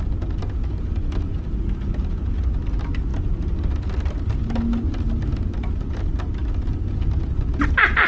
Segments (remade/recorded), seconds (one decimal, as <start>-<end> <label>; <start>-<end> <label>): 0.0-8.1 recorded